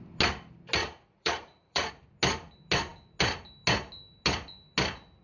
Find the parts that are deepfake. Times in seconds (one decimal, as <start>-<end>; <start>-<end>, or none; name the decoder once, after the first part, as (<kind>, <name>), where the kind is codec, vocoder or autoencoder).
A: 0.8-1.9 (vocoder, Vocos)